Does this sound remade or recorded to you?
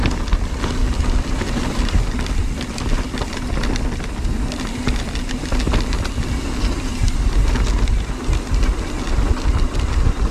recorded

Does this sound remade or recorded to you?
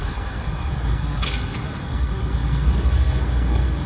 remade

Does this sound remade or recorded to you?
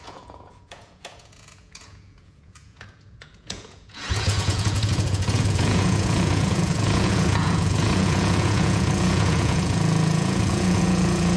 remade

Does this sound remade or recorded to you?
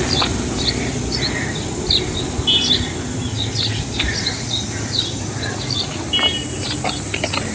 recorded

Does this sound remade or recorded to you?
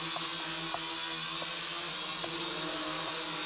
recorded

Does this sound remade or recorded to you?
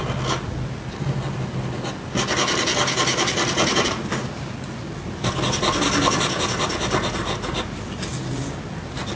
recorded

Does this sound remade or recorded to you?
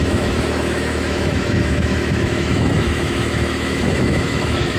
remade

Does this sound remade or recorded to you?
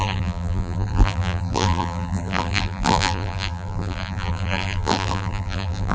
remade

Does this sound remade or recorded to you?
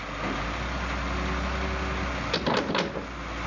recorded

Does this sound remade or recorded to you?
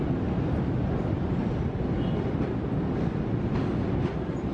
recorded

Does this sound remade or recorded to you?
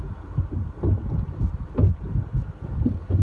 recorded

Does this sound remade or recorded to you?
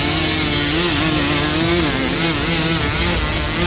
recorded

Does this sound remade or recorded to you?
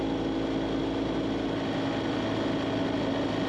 recorded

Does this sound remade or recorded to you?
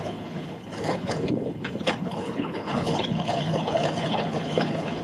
remade